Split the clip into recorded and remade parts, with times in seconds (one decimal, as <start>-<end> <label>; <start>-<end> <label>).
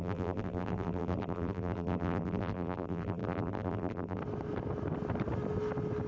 0.0-4.2 remade; 4.2-6.1 recorded